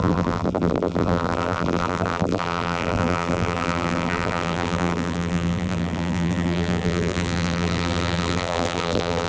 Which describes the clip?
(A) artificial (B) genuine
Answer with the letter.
A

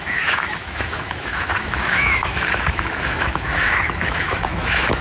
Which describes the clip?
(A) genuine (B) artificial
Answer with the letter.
B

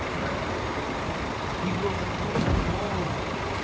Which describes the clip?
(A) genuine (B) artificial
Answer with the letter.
B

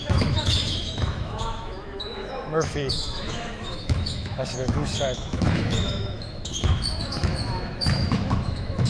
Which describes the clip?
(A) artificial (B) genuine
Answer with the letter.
A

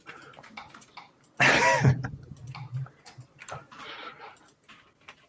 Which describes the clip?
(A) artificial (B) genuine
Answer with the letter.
B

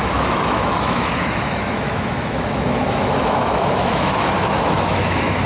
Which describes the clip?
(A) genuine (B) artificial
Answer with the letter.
B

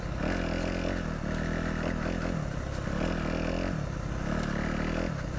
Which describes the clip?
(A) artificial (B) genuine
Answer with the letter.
B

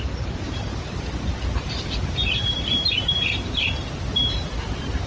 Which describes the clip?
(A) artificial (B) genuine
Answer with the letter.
A